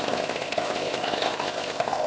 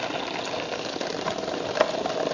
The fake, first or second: first